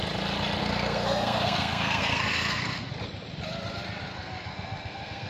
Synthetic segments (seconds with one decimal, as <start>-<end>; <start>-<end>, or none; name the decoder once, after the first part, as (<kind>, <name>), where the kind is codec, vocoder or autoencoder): 0.6-2.9 (codec, SNAC); 4.1-5.3